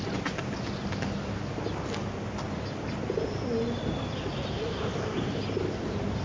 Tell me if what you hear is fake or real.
real